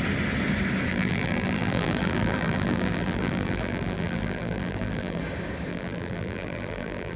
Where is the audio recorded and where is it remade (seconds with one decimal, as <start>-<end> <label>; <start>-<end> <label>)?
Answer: 0.0-0.9 recorded; 0.9-5.2 remade; 5.2-5.7 recorded; 5.7-7.2 remade

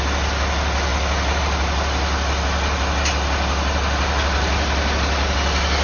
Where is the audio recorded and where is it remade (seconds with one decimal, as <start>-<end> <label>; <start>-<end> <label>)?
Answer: 0.0-5.8 recorded

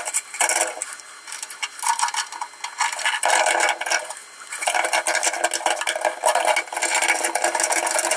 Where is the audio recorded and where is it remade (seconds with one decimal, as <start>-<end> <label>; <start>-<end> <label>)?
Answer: 0.0-8.2 recorded

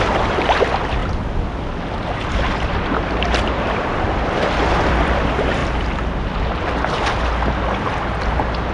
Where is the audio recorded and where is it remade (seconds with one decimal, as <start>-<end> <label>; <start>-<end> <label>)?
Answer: 0.0-5.6 remade; 5.6-8.7 recorded

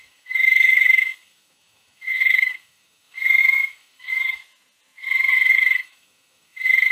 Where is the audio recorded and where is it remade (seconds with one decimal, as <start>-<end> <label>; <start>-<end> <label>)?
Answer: 0.0-4.4 remade; 4.4-5.5 recorded; 5.5-6.9 remade

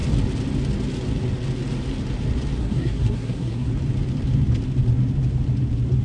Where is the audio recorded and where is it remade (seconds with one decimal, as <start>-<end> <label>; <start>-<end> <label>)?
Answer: 0.0-2.6 recorded; 2.6-3.7 remade; 3.7-6.0 recorded